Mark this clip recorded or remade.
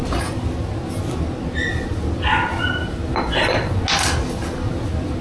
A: recorded